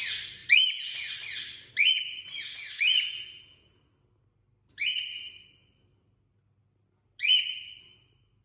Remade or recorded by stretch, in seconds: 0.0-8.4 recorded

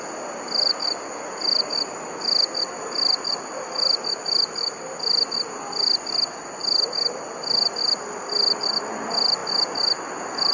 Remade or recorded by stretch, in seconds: 0.0-10.5 recorded

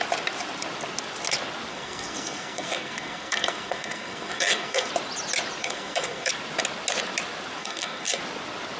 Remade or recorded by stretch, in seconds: 0.0-1.7 recorded; 1.7-4.9 remade; 4.9-5.6 recorded; 5.6-6.3 remade; 6.3-7.6 recorded; 7.6-8.2 remade; 8.2-8.8 recorded

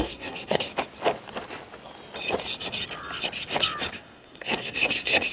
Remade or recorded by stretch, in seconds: 0.0-0.7 remade; 0.7-3.9 recorded; 3.9-5.3 remade

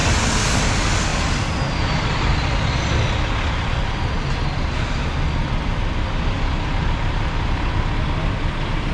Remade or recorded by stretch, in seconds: 0.0-8.9 recorded

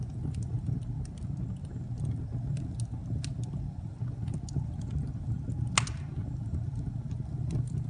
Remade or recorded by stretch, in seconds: 0.0-7.9 recorded

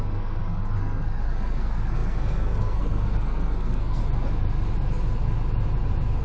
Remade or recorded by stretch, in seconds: 0.0-4.0 remade; 4.0-6.2 recorded

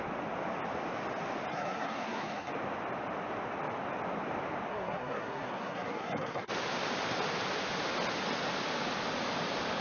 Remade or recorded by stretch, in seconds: 0.0-1.5 recorded; 1.5-2.5 remade; 2.5-4.7 recorded; 4.7-6.5 remade; 6.5-9.8 recorded